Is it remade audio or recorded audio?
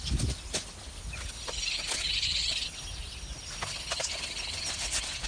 recorded